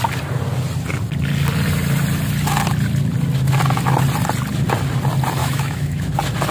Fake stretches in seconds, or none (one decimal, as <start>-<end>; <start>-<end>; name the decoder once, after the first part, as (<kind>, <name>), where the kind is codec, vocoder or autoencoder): 5.4-6.0 (autoencoder, DAC-VAE)